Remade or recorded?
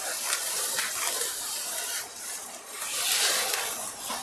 recorded